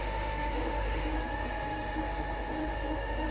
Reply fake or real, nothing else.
fake